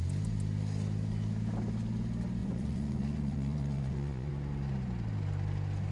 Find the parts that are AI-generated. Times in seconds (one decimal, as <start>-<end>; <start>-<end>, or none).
2.4-4.3